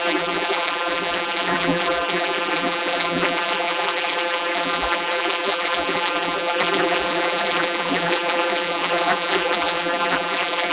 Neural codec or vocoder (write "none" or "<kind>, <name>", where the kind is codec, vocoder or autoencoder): vocoder, BigVGAN v2